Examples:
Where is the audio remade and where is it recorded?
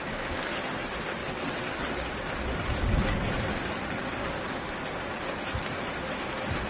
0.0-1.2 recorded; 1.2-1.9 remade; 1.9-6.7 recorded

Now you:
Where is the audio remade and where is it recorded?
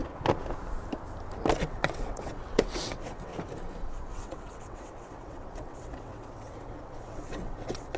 0.0-1.6 recorded; 1.6-3.3 remade; 3.3-4.1 recorded; 4.1-8.0 remade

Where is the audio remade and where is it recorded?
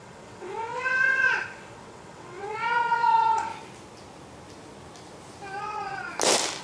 0.0-3.5 remade; 3.5-5.6 recorded; 5.6-6.1 remade; 6.1-6.6 recorded